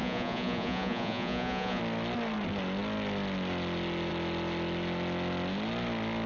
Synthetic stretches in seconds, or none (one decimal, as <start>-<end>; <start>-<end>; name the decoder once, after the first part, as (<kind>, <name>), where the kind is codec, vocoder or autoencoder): 0.0-1.8 (vocoder, Vocos)